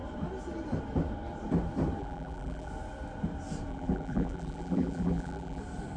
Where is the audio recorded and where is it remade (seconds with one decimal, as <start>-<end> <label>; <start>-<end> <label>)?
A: 0.0-2.0 recorded; 2.0-2.7 remade; 2.7-3.7 recorded; 3.7-5.6 remade; 5.6-6.0 recorded